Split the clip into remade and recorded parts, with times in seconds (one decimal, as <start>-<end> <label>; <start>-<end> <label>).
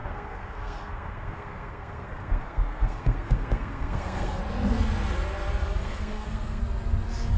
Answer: 0.0-4.4 remade; 4.4-5.8 recorded; 5.8-6.6 remade; 6.6-7.4 recorded